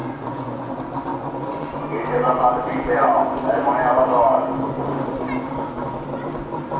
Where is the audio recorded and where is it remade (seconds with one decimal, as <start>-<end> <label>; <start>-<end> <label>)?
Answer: 0.0-0.7 remade; 0.7-1.1 recorded; 1.1-1.8 remade; 1.8-6.8 recorded